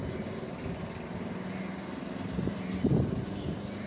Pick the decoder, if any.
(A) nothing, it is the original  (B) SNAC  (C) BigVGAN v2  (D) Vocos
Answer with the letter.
A